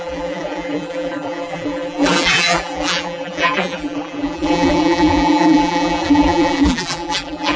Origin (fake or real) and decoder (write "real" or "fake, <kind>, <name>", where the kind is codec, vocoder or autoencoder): fake, vocoder, BigVGAN v2